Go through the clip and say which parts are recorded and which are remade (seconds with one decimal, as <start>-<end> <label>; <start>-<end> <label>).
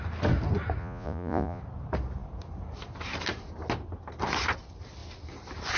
0.0-0.8 recorded; 0.8-1.6 remade; 1.6-5.8 recorded